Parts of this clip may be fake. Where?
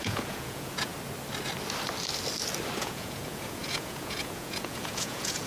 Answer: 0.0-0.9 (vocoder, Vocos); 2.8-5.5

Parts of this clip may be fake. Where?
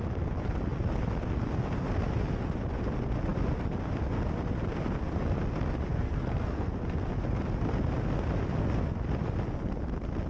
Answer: 5.9-6.7 (codec, SNAC)